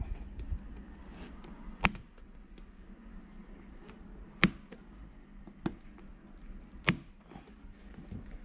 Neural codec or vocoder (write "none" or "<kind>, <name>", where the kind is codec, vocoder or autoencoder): none